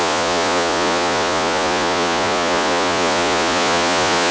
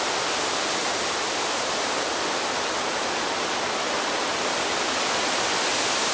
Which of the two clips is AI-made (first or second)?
first